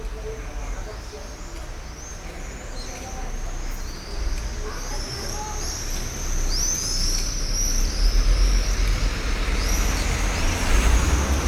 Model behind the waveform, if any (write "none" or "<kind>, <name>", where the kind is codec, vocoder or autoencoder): none